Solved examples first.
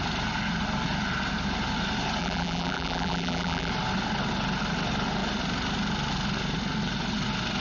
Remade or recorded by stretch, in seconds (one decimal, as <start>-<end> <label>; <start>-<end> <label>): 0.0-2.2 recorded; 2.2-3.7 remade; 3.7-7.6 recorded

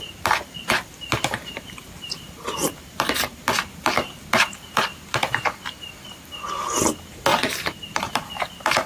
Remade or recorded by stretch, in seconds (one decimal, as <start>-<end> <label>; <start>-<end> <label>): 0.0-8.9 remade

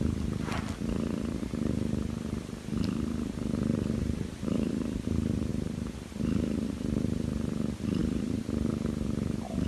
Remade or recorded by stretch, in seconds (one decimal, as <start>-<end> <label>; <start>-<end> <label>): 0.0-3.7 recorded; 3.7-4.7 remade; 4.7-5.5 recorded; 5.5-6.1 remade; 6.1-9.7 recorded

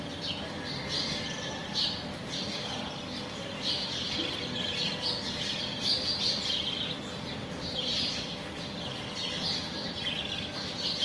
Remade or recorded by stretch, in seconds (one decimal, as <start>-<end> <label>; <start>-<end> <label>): 0.0-7.4 recorded; 7.4-8.2 remade; 8.2-11.0 recorded

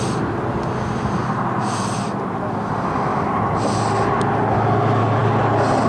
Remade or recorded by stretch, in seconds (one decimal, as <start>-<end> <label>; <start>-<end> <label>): 0.0-5.9 recorded

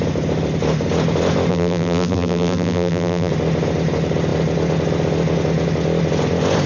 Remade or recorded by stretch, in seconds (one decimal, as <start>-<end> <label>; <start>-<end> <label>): 0.0-1.5 recorded; 1.5-3.3 remade; 3.3-6.7 recorded

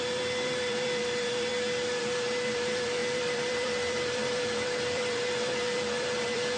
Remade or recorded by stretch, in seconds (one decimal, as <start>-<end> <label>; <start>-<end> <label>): 0.0-1.5 remade; 1.5-2.0 recorded; 2.0-6.6 remade

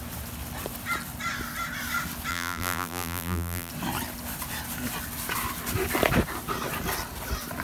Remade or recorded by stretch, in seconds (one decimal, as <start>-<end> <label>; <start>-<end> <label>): 0.0-2.3 recorded; 2.3-3.7 remade; 3.7-7.6 recorded